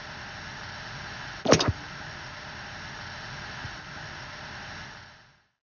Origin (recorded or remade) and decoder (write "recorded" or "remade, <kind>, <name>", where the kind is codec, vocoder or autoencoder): recorded